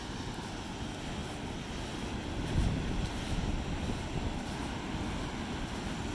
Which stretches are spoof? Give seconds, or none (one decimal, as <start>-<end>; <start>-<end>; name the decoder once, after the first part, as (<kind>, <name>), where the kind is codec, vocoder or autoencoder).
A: none